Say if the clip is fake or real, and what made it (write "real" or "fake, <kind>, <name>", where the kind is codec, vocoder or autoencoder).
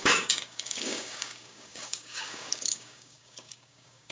fake, codec, DAC